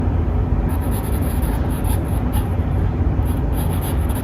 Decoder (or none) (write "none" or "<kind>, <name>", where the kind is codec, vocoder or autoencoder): none